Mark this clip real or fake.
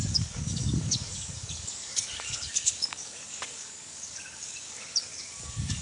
fake